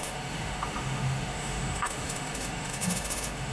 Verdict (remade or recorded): remade